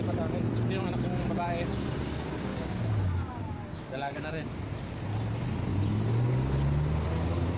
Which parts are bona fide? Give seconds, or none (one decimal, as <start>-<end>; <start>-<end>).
0.0-2.5; 4.6-7.6